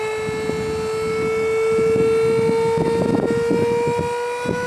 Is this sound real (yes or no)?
yes